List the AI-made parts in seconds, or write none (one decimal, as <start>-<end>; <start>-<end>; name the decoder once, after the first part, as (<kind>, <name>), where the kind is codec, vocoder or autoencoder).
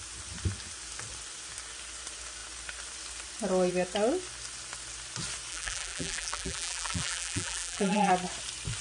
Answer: 5.5-8.1 (vocoder, BigVGAN v2)